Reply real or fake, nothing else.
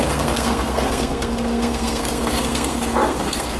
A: fake